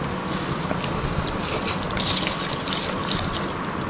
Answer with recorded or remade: recorded